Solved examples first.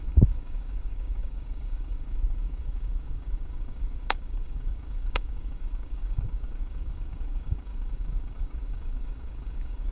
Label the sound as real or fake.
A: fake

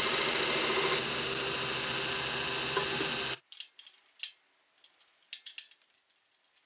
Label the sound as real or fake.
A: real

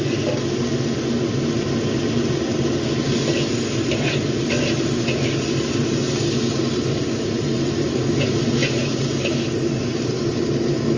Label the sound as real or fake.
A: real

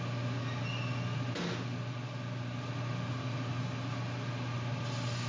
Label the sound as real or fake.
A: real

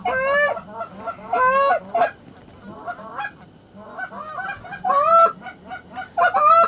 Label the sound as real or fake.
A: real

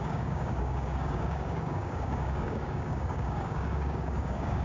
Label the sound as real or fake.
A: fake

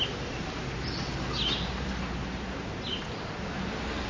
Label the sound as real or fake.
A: real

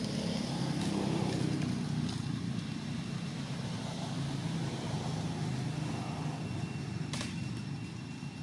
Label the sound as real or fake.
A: real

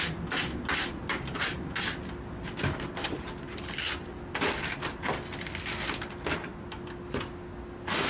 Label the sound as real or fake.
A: real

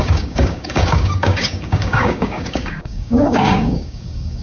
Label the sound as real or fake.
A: fake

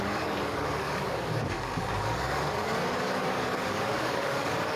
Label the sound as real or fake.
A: fake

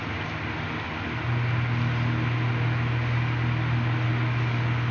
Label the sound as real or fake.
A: real